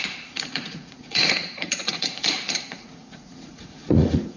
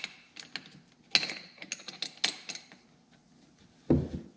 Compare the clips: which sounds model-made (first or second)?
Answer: first